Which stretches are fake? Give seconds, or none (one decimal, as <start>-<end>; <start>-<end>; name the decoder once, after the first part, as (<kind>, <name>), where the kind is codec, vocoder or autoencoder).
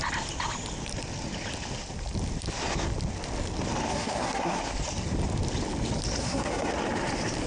3.9-4.6 (codec, SNAC); 6.2-6.7